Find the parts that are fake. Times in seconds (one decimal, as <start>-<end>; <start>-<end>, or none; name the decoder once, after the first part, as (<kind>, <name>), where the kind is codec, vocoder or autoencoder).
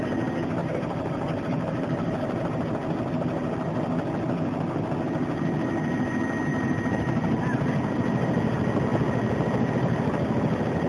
0.6-2.7 (vocoder, BigVGAN v2); 6.5-7.4